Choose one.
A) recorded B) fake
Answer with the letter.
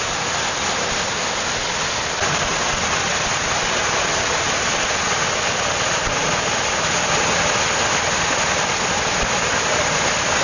A